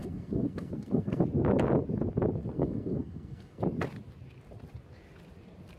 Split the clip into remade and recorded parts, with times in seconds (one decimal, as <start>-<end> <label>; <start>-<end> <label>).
0.0-1.2 remade; 1.2-2.4 recorded; 2.4-3.6 remade; 3.6-5.8 recorded